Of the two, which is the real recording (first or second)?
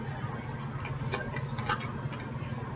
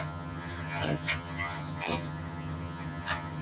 first